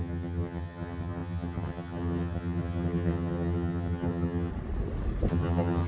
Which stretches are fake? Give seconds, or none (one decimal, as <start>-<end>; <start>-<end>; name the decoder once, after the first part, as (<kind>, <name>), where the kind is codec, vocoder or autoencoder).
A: 0.0-4.5 (vocoder, HiFi-GAN); 5.3-5.9